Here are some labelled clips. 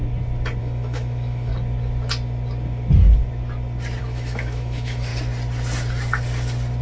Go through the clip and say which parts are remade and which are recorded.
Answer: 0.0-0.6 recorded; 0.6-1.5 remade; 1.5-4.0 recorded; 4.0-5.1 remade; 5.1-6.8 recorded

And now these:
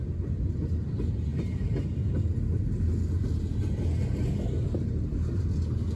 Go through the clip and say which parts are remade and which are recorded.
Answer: 0.0-6.0 recorded

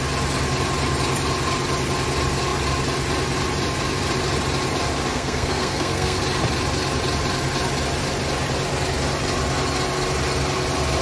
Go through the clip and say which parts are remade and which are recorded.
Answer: 0.0-5.1 recorded; 5.1-6.2 remade; 6.2-11.0 recorded